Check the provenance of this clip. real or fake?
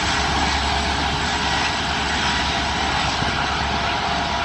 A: real